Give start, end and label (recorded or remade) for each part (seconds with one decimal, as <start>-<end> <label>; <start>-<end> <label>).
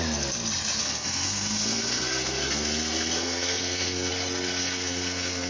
0.0-0.8 recorded; 0.8-4.1 remade; 4.1-4.6 recorded; 4.6-5.5 remade